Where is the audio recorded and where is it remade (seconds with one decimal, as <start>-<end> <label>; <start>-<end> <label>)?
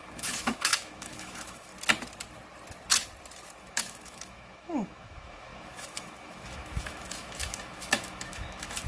0.0-1.7 remade; 1.7-3.6 recorded; 3.6-8.9 remade